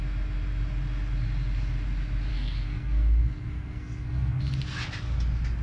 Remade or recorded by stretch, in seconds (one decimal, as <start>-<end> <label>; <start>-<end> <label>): 0.0-2.3 recorded; 2.3-4.4 remade; 4.4-5.6 recorded